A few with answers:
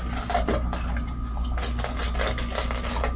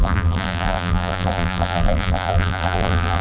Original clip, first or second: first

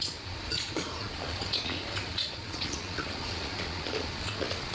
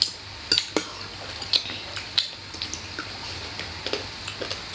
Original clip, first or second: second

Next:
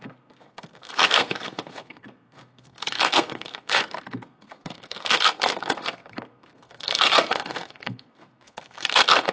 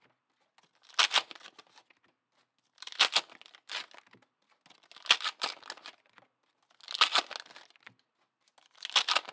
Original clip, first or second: second